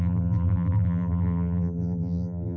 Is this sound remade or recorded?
remade